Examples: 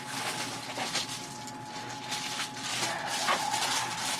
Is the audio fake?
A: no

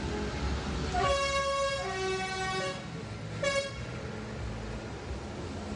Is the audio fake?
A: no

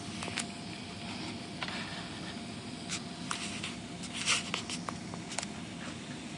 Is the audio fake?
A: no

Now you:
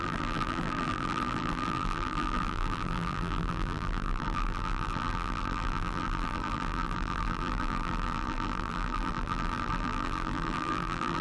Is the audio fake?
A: yes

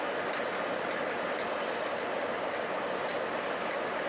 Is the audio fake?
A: no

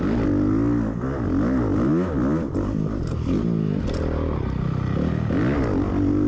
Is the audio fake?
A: no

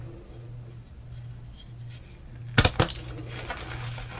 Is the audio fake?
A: no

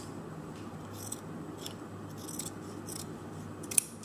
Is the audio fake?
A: yes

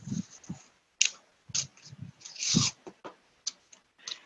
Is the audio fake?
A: no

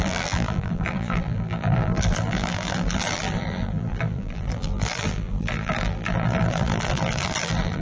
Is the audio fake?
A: yes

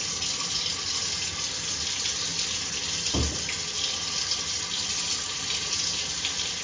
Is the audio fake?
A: no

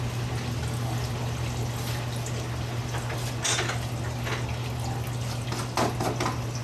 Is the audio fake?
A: no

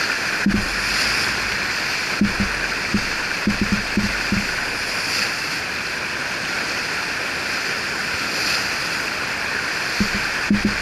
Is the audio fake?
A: no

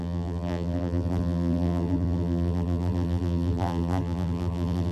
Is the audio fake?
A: yes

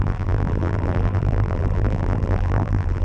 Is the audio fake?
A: yes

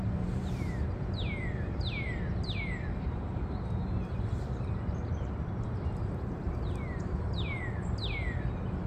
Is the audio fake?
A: yes